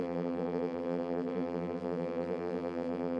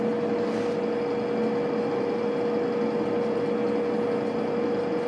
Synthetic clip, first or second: first